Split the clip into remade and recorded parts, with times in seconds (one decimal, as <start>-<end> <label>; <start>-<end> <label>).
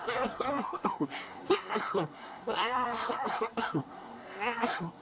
0.0-5.0 remade